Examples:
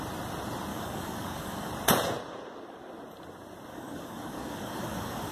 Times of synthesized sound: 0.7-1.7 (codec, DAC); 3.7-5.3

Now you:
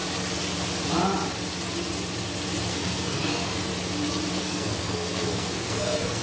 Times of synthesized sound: 2.7-3.7 (codec, SNAC); 4.3-6.2

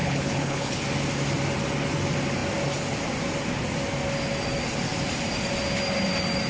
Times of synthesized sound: 0.0-0.8 (codec, HILCodec)

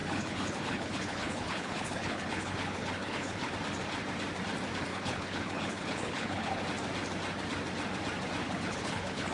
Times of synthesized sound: 0.0-3.5 (codec, HILCodec); 4.9-6.6; 8.4-9.3

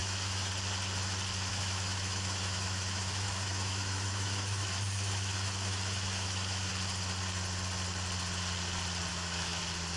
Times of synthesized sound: 0.0-0.5 (autoencoder, DAC-VAE); 1.5-6.7; 9.1-9.6